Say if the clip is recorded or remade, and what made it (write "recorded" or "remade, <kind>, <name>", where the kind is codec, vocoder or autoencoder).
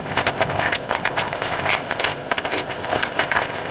remade, codec, ZipCodec